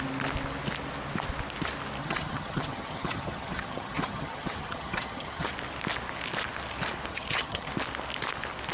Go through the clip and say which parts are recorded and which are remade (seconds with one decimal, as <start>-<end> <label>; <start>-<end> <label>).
0.0-2.0 recorded; 2.0-5.5 remade; 5.5-7.1 recorded; 7.1-7.7 remade; 7.7-8.7 recorded